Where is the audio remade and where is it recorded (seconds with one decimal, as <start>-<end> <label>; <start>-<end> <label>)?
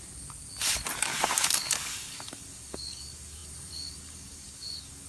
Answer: 0.0-0.4 remade; 0.4-1.0 recorded; 1.0-5.1 remade